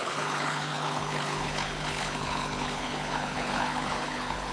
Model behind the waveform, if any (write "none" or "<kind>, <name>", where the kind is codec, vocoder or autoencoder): codec, HILCodec